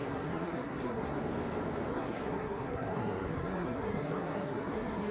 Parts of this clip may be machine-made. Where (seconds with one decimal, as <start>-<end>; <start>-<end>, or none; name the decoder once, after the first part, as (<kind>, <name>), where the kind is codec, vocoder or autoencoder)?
0.0-1.2 (codec, SNAC); 1.9-5.1